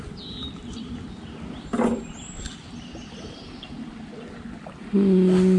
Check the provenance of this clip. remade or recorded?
recorded